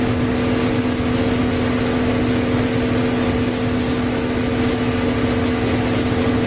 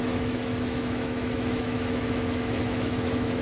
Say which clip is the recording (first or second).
first